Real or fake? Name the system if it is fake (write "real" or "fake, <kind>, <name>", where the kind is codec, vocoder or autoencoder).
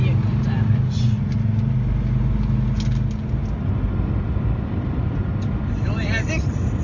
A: real